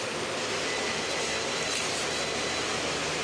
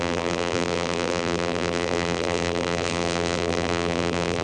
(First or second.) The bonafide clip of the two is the first